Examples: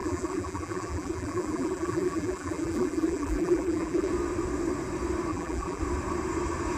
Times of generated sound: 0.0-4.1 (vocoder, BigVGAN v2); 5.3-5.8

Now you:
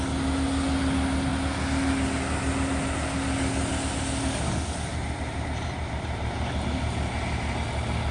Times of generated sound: 4.9-6.8 (vocoder, BigVGAN v2)

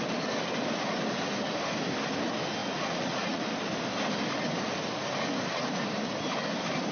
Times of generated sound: 2.6-3.4 (vocoder, Vocos)

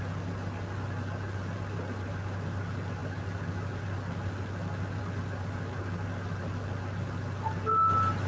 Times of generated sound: none

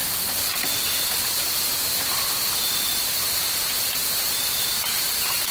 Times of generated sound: none

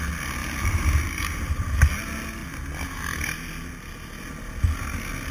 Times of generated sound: 0.4-1.9 (vocoder, BigVGAN v2)

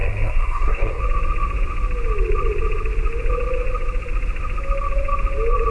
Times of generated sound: 0.0-1.0 (codec, SNAC)

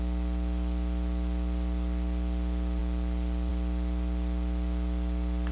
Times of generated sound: none